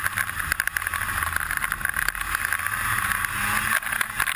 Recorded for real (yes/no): yes